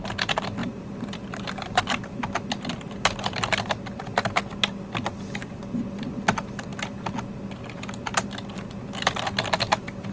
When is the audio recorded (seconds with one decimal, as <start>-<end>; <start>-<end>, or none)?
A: 0.0-0.6; 1.8-10.1